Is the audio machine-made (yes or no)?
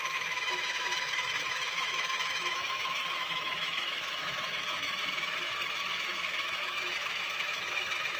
yes